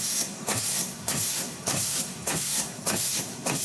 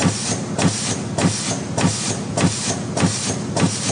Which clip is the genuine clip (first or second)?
second